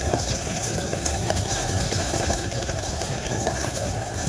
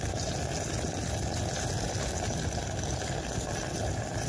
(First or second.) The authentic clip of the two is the second